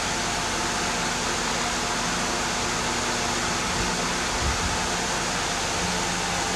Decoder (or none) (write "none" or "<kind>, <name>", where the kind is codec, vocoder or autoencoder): none